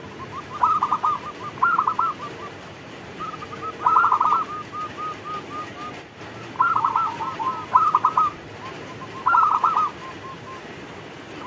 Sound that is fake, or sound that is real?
real